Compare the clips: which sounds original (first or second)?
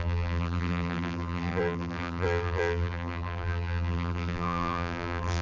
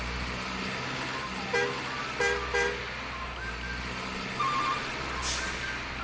second